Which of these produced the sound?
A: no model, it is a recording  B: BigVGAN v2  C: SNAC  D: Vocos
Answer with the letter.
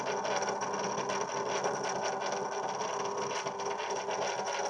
A